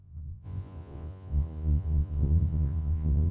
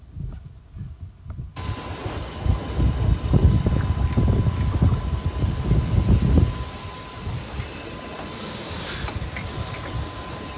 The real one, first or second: second